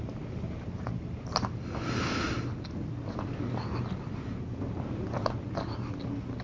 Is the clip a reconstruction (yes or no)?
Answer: no